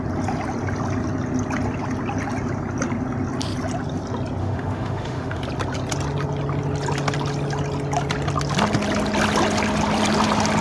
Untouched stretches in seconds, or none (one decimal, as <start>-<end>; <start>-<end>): 0.0-4.4; 5.4-10.6